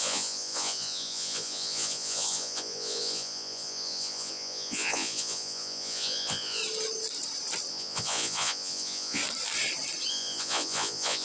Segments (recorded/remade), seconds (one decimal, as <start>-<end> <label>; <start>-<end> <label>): 0.0-6.6 remade; 6.6-7.7 recorded; 7.7-9.2 remade; 9.2-10.1 recorded; 10.1-11.2 remade

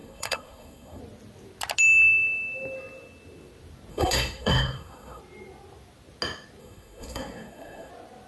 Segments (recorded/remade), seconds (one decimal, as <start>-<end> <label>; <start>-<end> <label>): 0.0-1.0 remade; 1.0-3.9 recorded; 3.9-5.2 remade; 5.2-6.6 recorded; 6.6-7.9 remade; 7.9-8.3 recorded

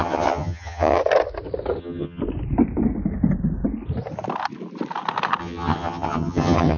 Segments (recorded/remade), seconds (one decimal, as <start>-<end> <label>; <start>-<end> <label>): 0.0-1.0 remade; 1.0-1.8 recorded; 1.8-2.2 remade; 2.2-5.4 recorded; 5.4-6.8 remade

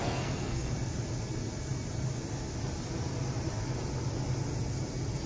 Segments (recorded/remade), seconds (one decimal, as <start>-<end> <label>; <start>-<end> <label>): 0.0-0.7 remade; 0.7-5.3 recorded

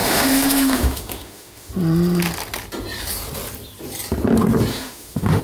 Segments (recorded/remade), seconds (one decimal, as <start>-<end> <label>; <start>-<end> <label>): 0.0-1.7 remade; 1.7-4.7 recorded; 4.7-5.4 remade